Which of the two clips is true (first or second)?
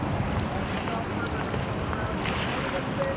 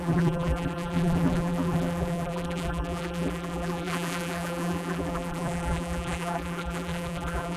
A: first